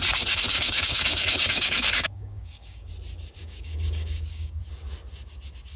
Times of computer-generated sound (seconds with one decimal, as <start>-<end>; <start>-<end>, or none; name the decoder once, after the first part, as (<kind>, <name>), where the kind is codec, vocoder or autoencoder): 0.5-2.9 (codec, DAC); 3.4-4.6